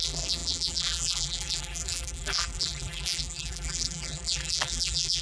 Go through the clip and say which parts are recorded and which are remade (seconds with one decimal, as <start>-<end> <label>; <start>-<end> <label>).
0.0-5.2 remade